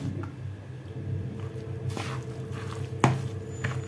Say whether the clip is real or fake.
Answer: real